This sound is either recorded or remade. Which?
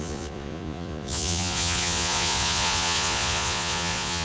remade